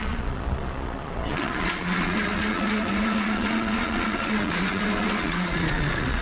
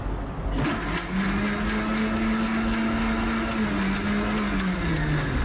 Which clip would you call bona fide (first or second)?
second